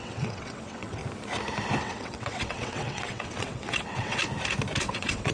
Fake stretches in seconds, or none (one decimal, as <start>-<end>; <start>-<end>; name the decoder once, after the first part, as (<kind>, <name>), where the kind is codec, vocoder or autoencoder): 0.0-1.0 (vocoder, WaveNeXt); 1.8-4.2; 4.8-5.3